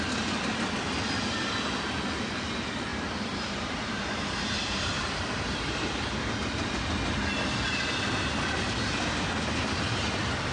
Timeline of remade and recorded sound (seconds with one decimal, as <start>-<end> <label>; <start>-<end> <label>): 0.0-2.9 recorded; 2.9-6.0 remade; 6.0-10.5 recorded